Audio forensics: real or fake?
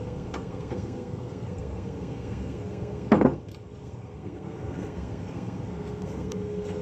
fake